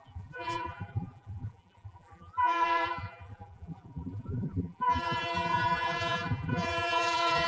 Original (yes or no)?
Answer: no